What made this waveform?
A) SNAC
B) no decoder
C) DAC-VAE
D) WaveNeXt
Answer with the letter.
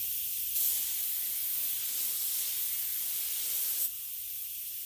B